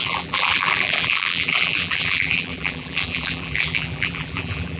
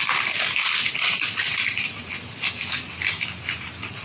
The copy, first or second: first